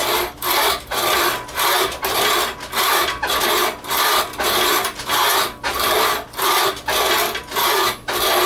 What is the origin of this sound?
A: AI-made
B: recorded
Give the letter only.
B